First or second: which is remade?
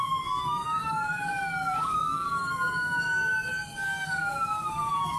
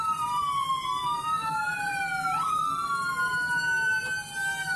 first